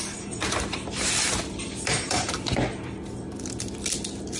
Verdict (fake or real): fake